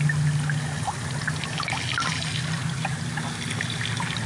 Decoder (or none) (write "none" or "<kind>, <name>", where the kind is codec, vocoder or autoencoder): none